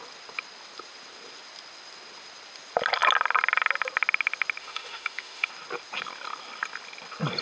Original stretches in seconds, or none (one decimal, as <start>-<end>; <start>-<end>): 0.0-4.6; 5.5-7.4